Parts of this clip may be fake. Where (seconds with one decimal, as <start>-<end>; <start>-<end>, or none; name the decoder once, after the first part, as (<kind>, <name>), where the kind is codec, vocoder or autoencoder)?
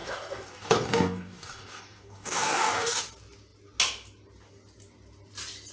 0.0-3.0 (codec, DAC)